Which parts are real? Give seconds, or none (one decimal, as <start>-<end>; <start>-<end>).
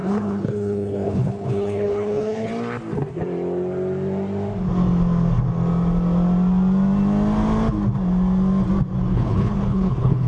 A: 2.5-9.1